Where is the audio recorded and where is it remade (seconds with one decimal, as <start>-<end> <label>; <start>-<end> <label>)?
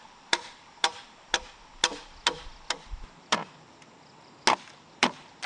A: 0.0-1.8 remade; 1.8-2.7 recorded; 2.7-3.4 remade; 3.4-4.8 recorded; 4.8-5.5 remade